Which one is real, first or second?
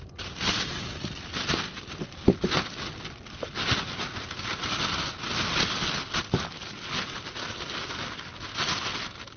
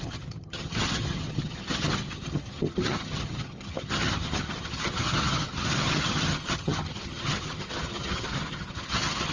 first